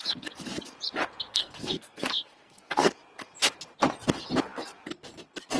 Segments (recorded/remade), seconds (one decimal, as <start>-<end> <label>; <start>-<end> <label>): 0.0-1.3 recorded; 1.3-2.9 remade; 2.9-5.6 recorded